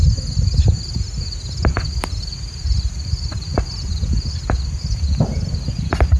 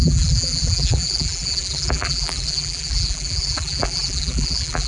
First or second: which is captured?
first